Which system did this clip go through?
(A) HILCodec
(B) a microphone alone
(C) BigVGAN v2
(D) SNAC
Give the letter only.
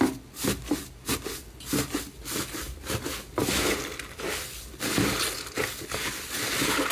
B